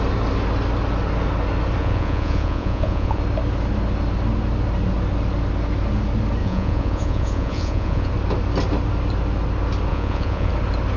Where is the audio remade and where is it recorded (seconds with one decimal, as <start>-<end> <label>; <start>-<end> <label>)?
0.0-1.8 recorded; 1.8-3.2 remade; 3.2-6.4 recorded; 6.4-8.1 remade; 8.1-9.9 recorded; 9.9-10.5 remade; 10.5-11.0 recorded